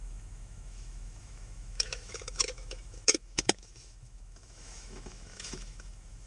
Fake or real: fake